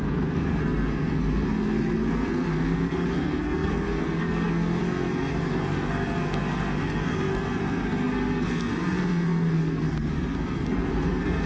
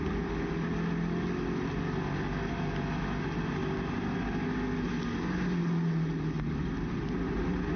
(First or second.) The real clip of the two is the second